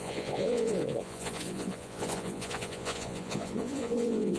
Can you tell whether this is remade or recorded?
remade